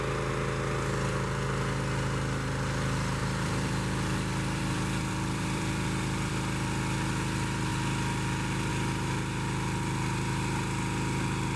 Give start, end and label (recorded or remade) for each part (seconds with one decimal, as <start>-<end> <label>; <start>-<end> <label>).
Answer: 0.0-3.2 recorded; 3.2-6.3 remade; 6.3-11.6 recorded